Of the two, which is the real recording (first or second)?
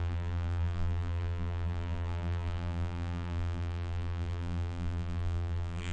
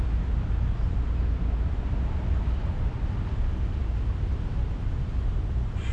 second